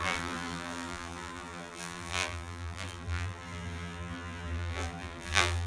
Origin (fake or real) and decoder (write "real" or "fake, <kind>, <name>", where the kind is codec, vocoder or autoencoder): fake, vocoder, BigVGAN v2